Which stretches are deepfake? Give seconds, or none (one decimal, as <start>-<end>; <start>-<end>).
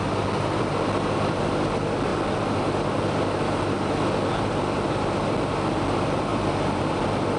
6.3-6.8